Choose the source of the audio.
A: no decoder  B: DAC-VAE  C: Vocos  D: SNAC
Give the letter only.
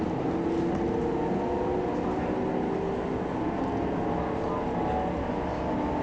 A